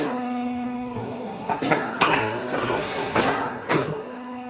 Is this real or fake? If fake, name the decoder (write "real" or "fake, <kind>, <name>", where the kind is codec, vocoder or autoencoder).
fake, codec, SNAC